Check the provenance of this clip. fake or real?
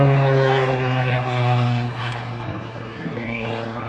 fake